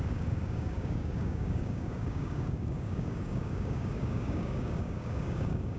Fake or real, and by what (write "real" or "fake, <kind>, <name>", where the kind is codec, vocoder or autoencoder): fake, codec, DAC